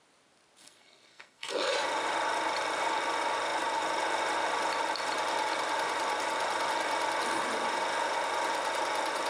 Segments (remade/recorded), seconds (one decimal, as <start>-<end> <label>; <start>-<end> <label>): 0.0-0.6 recorded; 0.6-1.7 remade; 1.7-9.3 recorded